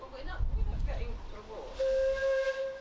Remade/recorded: recorded